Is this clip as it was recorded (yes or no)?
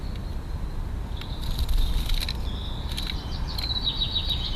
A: yes